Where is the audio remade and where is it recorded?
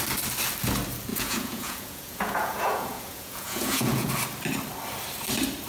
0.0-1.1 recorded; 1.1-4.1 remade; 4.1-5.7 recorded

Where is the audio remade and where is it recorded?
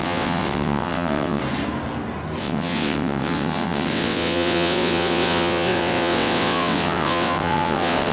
0.0-1.4 remade; 1.4-2.4 recorded; 2.4-8.1 remade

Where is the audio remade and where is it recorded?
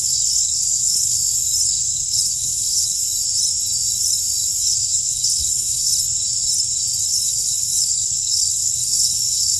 0.0-1.2 remade; 1.2-1.8 recorded; 1.8-3.0 remade; 3.0-4.6 recorded; 4.6-5.9 remade; 5.9-7.0 recorded; 7.0-9.6 remade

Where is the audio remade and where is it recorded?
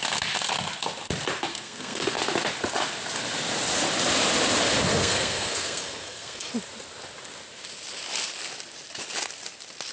0.0-1.5 recorded; 1.5-2.2 remade; 2.2-4.9 recorded; 4.9-6.5 remade; 6.5-9.9 recorded